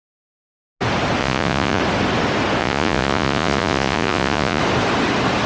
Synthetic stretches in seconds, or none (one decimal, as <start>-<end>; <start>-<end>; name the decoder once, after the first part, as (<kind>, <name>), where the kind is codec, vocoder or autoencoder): 1.2-1.8 (vocoder, Vocos); 2.6-4.6